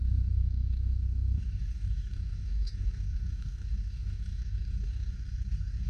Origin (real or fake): fake